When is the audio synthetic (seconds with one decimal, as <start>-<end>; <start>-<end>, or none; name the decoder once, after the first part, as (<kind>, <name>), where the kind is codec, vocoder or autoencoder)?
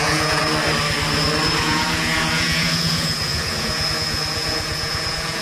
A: 0.0-0.4 (vocoder, Vocos); 1.6-5.4